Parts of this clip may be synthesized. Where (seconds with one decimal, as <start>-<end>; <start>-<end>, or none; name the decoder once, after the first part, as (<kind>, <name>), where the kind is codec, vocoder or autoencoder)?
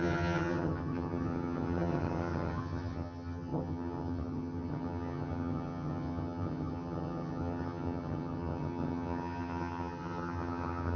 0.0-11.0 (vocoder, HiFi-GAN)